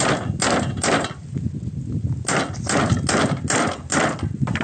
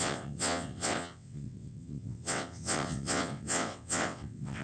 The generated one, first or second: second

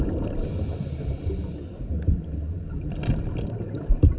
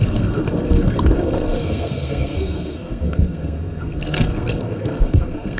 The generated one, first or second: second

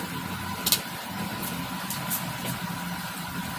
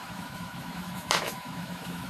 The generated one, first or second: second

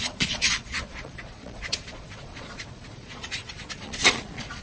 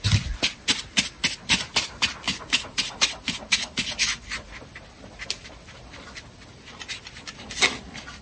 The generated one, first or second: first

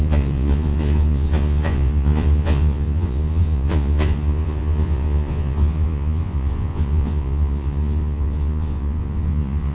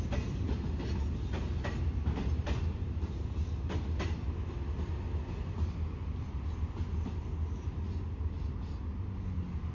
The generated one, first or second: first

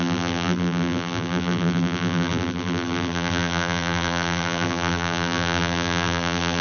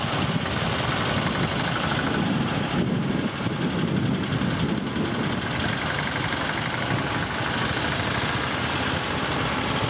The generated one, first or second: first